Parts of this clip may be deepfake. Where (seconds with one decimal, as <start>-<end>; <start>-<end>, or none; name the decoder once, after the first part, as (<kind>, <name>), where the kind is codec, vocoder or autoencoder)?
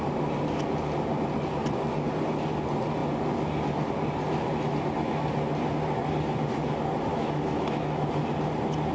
7.1-8.1 (autoencoder, DAC-VAE)